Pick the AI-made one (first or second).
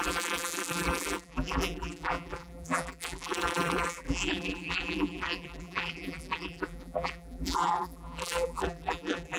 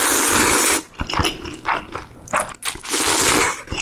first